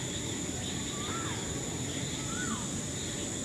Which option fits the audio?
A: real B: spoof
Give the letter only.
A